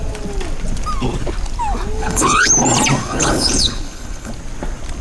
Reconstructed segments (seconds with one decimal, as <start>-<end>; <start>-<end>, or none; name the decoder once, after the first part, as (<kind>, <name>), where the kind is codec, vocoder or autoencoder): 2.0-2.5 (codec, HILCodec); 3.0-4.3